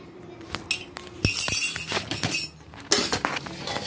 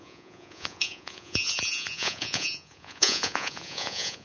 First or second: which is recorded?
first